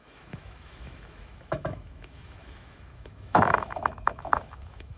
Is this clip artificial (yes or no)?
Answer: yes